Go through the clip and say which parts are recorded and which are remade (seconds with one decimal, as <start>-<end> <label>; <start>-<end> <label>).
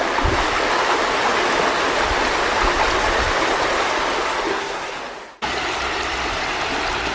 0.0-4.5 recorded; 4.5-5.0 remade; 5.0-7.1 recorded